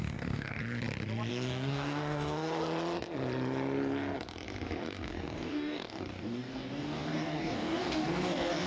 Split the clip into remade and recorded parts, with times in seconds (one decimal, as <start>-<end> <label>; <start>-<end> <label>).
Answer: 0.0-0.6 remade; 0.6-1.3 recorded; 1.3-2.6 remade; 2.6-4.8 recorded; 4.8-8.7 remade